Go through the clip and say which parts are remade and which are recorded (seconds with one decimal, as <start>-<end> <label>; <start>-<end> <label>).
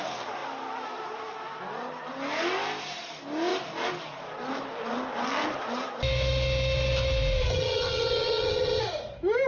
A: 0.0-7.5 recorded; 7.5-8.8 remade; 8.8-9.5 recorded